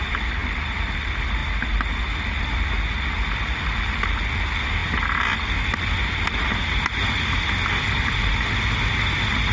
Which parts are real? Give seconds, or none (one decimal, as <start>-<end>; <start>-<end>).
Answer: 0.0-9.5